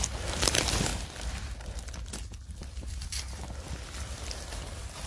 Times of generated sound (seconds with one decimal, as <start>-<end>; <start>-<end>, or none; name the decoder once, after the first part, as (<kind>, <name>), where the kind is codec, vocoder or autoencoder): 0.9-3.7 (vocoder, BigVGAN v2)

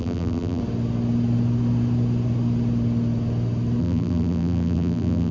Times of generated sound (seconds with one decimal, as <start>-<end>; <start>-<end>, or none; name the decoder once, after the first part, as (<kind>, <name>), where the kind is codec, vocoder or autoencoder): 0.0-0.6 (vocoder, BigVGAN v2); 3.8-5.3

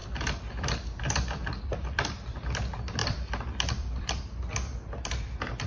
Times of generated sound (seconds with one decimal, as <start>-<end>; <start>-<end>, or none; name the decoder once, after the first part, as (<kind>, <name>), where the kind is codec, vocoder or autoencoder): 3.0-4.5 (vocoder, BigVGAN v2)

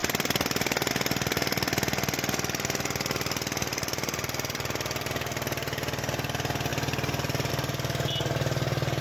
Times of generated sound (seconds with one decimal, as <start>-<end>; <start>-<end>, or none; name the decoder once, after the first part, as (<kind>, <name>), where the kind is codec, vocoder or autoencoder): 0.0-0.9 (vocoder, BigVGAN v2); 3.7-5.1

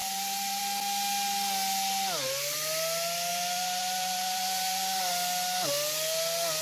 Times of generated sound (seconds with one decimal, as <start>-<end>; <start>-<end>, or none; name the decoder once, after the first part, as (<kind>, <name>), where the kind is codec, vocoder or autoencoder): 0.0-0.6 (vocoder, BigVGAN v2); 3.3-5.1